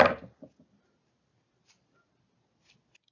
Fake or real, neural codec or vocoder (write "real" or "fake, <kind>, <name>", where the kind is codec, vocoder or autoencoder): real